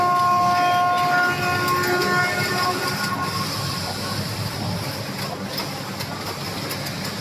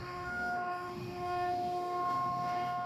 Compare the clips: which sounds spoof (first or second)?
second